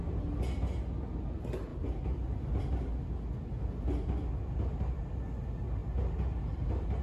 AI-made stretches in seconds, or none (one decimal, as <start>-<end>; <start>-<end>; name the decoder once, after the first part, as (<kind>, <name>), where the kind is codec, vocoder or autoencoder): 1.7-2.6 (vocoder, BigVGAN v2)